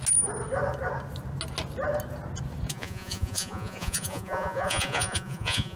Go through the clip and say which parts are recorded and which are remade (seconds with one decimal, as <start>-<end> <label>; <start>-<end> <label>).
0.0-2.7 recorded; 2.7-5.8 remade